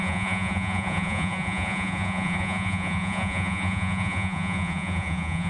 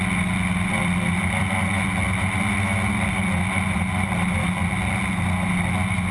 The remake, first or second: first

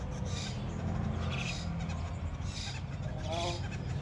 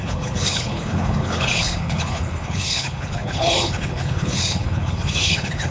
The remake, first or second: second